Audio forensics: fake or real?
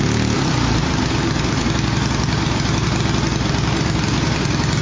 real